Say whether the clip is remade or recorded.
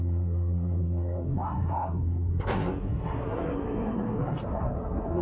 remade